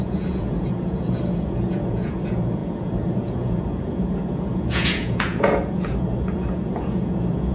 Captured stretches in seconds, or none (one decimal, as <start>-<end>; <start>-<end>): none